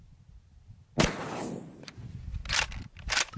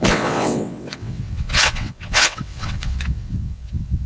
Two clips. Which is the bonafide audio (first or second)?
first